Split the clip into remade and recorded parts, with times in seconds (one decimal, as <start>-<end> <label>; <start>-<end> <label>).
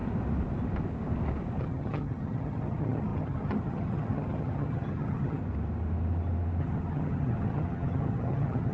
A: 0.0-1.6 recorded; 1.6-5.4 remade; 5.4-6.6 recorded; 6.6-8.7 remade